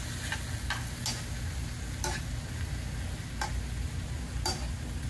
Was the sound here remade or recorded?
recorded